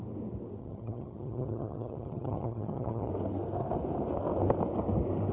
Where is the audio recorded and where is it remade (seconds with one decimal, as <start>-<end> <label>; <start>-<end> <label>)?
0.0-0.6 recorded; 0.6-3.1 remade; 3.1-5.3 recorded